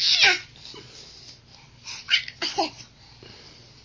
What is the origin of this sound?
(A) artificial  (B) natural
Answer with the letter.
B